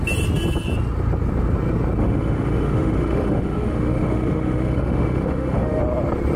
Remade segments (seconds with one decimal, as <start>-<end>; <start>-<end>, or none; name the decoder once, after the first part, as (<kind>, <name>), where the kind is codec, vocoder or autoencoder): 2.0-5.8 (autoencoder, DAC-VAE)